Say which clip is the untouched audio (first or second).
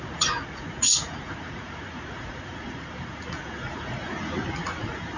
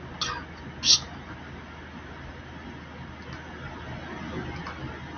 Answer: second